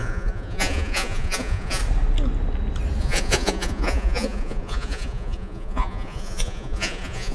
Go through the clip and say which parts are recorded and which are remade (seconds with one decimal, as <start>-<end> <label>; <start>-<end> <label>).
0.0-1.8 remade; 1.8-3.0 recorded; 3.0-7.3 remade